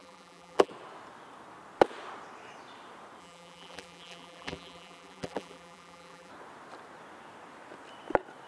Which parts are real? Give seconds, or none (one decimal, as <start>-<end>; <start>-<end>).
0.7-3.2; 6.3-8.5